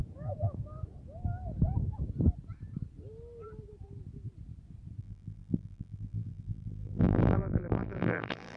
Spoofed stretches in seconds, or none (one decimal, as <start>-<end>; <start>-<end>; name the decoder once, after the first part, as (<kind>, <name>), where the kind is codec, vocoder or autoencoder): 5.0-8.6 (vocoder, BigVGAN v2)

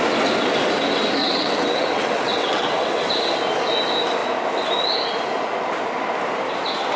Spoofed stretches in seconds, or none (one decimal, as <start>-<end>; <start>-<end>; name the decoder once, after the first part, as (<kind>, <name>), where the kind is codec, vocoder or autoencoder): 1.2-3.2 (vocoder, WaveNeXt)

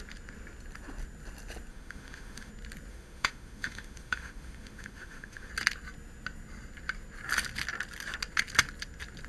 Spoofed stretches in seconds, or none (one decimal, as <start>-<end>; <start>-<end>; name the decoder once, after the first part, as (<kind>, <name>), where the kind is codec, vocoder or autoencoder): 1.7-2.5 (autoencoder, DAC-VAE); 2.9-5.5